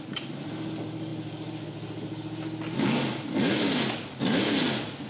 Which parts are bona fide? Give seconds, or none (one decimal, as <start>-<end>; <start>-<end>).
0.0-5.1